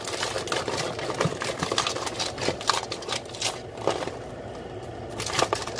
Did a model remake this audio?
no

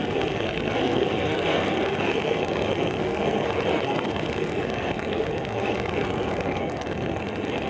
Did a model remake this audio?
yes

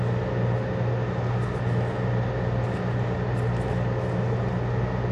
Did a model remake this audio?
no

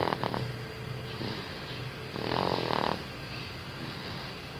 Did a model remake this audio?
no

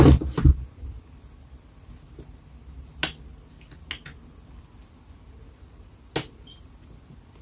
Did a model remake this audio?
no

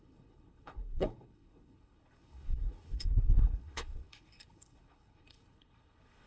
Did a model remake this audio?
yes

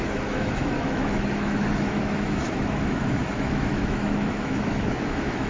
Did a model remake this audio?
yes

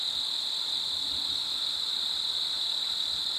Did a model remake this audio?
no